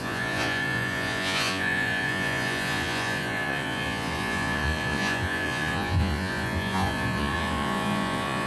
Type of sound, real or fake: fake